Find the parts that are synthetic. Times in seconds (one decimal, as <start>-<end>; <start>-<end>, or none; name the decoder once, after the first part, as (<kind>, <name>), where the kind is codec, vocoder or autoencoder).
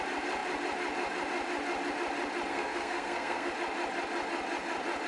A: 2.5-3.5 (codec, SNAC)